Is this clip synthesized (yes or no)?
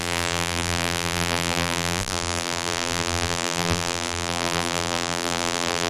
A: yes